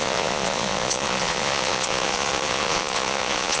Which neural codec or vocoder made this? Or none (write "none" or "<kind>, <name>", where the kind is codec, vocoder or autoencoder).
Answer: vocoder, Vocos